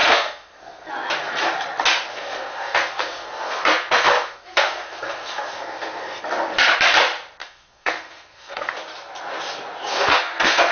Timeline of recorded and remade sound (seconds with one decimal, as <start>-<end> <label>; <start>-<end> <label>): 0.0-0.9 remade; 0.9-2.1 recorded; 2.1-6.2 remade; 6.2-7.4 recorded; 7.4-8.7 remade; 8.7-9.9 recorded; 9.9-10.7 remade